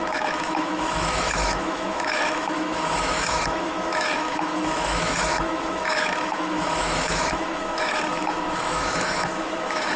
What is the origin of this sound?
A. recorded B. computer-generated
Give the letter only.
B